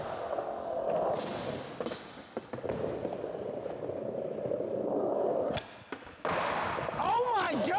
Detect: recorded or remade recorded